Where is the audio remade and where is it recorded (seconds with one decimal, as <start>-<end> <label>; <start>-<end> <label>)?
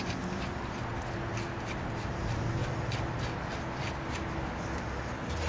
0.0-2.6 recorded; 2.6-3.2 remade; 3.2-5.5 recorded